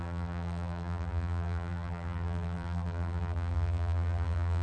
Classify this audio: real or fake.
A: fake